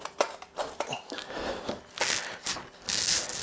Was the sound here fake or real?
real